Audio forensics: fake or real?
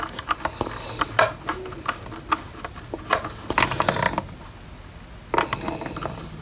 real